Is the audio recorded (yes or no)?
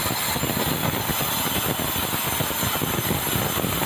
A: yes